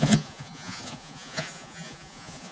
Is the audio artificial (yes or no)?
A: yes